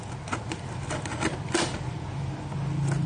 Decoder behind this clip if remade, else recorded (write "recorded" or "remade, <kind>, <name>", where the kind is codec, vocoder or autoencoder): recorded